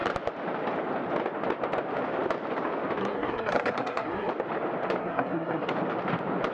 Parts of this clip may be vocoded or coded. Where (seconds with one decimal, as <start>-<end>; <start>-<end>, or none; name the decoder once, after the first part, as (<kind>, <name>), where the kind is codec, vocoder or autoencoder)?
3.0-4.3 (codec, SNAC); 5.0-5.7